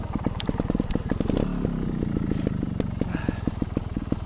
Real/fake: real